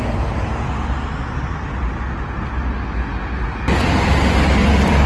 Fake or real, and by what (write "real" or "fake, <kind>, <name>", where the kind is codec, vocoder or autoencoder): real